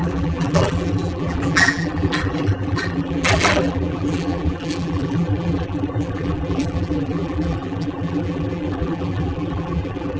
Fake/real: fake